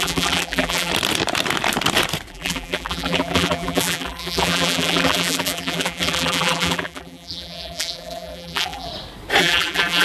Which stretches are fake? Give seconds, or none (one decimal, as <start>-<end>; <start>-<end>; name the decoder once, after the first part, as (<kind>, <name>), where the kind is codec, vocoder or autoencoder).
0.0-0.9 (vocoder, BigVGAN v2); 2.3-8.9; 9.4-10.0